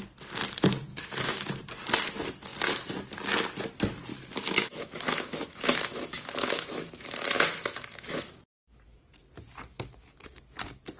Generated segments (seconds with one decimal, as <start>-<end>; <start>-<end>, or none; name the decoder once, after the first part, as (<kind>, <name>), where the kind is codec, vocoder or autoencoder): 0.9-1.5 (autoencoder, DAC-VAE); 4.1-9.0; 9.7-10.4

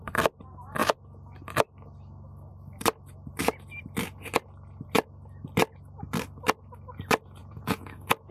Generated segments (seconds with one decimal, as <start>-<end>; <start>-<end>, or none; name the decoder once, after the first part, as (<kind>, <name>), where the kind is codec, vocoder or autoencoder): 7.4-8.3 (vocoder, Vocos)

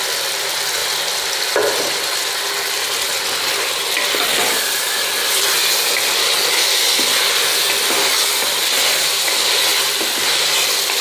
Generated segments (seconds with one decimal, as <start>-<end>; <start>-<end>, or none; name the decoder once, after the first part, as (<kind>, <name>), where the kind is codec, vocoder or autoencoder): none

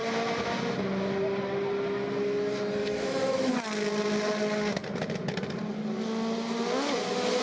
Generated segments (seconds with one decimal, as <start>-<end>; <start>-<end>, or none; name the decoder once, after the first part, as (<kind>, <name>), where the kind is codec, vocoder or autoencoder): 2.8-3.5 (autoencoder, DAC-VAE)

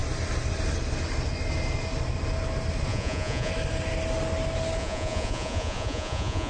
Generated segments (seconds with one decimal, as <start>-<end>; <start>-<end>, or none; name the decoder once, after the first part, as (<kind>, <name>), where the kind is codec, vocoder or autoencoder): 2.9-3.5 (vocoder, Vocos); 4.8-6.5

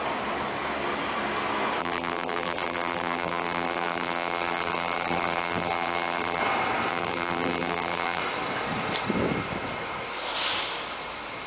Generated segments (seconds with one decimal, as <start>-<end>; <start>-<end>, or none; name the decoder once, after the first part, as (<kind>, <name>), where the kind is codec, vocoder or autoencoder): 1.8-6.4 (vocoder, BigVGAN v2); 6.9-8.2

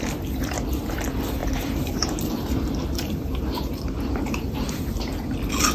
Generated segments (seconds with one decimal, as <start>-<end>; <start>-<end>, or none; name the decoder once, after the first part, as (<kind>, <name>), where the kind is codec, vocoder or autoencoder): 1.4-4.8 (vocoder, BigVGAN v2)

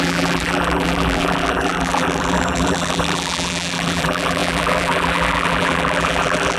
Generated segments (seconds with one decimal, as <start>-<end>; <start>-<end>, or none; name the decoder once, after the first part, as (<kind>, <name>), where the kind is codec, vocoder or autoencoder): 0.0-6.6 (vocoder, BigVGAN v2)